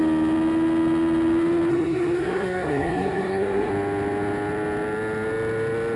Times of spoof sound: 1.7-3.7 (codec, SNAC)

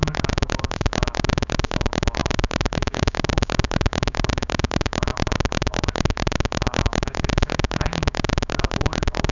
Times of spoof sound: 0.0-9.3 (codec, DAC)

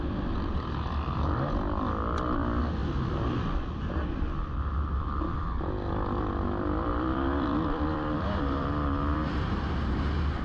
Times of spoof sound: 6.9-9.4 (vocoder, BigVGAN v2)

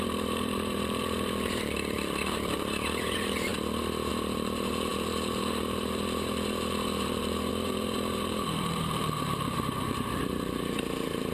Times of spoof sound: 0.0-3.5 (vocoder, BigVGAN v2); 4.1-11.3